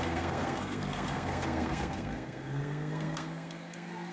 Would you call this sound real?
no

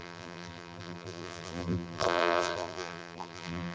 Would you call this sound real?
no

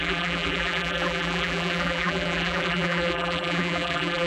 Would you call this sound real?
no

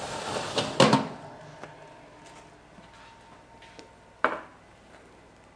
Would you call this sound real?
yes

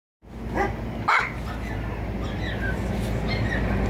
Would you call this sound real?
yes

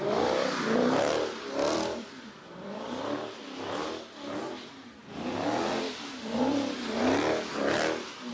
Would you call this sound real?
no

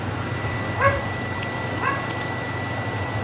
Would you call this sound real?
yes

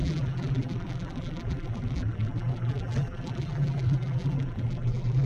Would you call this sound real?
no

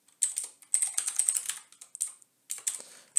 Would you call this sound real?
yes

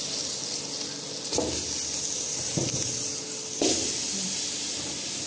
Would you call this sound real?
yes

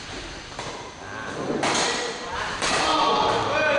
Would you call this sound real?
no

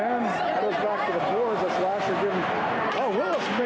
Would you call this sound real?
yes